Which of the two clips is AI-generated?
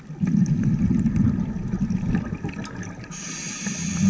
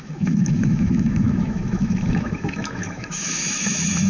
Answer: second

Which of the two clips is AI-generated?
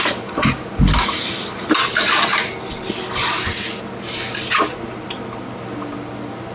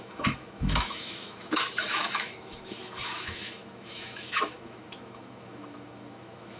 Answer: second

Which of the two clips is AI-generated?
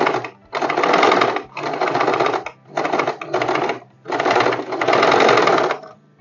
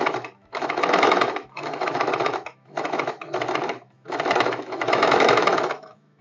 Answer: second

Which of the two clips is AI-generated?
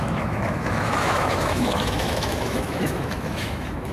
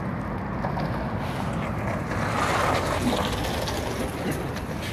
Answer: first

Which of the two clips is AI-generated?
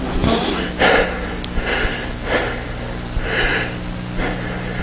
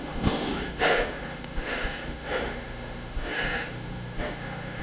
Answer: second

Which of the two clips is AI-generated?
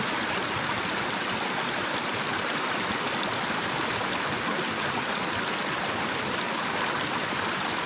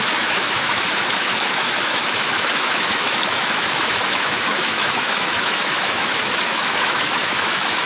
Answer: second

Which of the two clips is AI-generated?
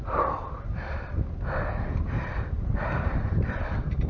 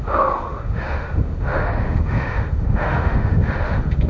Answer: second